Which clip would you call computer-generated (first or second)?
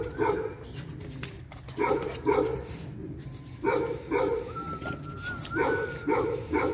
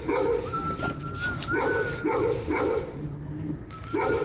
first